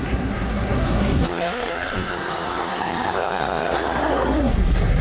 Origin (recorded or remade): remade